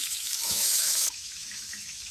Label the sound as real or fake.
fake